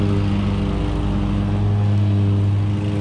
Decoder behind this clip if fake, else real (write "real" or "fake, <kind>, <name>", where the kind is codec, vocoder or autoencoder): real